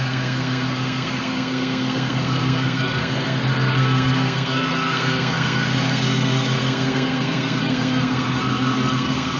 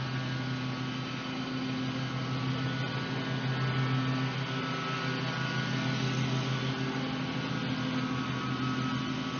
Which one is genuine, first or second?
second